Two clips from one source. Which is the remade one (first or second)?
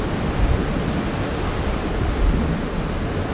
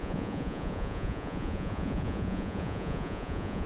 second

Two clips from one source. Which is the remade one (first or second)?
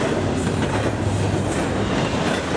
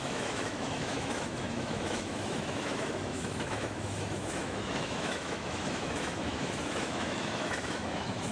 second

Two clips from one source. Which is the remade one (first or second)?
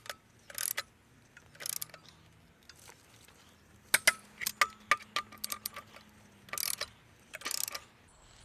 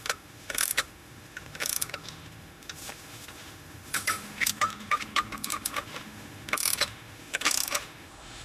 second